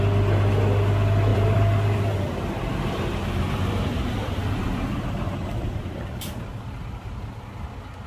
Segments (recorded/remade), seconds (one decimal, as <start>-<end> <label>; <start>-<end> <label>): 0.0-1.3 recorded; 1.3-2.0 remade; 2.0-2.7 recorded; 2.7-7.1 remade; 7.1-8.1 recorded